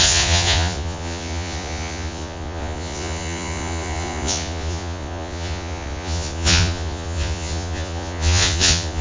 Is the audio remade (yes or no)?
yes